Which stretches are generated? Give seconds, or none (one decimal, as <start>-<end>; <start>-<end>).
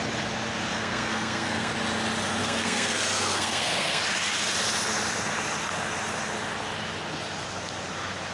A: 0.7-1.7; 2.4-4.0